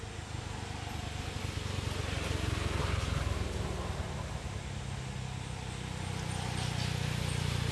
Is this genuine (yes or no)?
yes